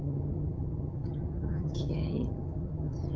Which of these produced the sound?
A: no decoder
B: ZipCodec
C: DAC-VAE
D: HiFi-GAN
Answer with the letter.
D